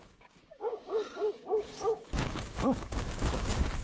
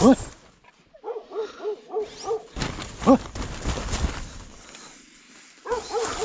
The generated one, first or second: first